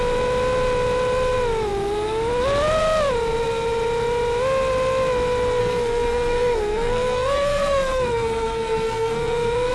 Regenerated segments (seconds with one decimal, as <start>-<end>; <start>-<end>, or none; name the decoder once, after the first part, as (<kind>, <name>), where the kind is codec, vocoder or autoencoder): 5.6-9.7 (codec, SNAC)